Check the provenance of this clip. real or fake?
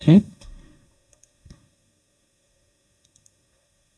fake